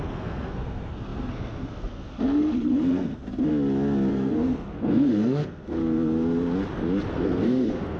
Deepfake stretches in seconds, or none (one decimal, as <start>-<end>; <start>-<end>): 0.0-3.5; 4.1-5.8; 7.1-8.0